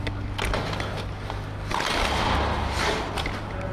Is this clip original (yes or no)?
yes